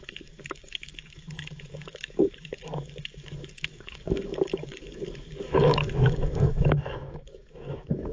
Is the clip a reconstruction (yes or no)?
yes